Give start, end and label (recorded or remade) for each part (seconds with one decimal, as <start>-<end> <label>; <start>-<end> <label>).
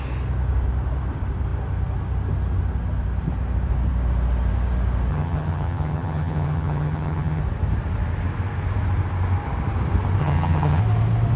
0.0-5.1 recorded; 5.1-7.4 remade; 7.4-10.2 recorded; 10.2-10.8 remade; 10.8-11.4 recorded